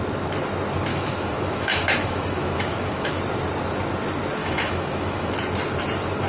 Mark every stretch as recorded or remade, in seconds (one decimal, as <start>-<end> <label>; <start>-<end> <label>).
0.0-0.9 recorded; 0.9-3.2 remade; 3.2-4.4 recorded; 4.4-5.3 remade; 5.3-6.3 recorded